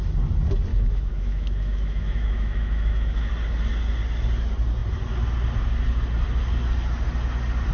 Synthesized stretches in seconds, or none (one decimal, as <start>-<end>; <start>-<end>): 0.7-3.3